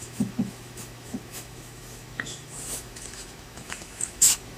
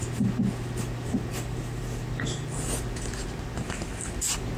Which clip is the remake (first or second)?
first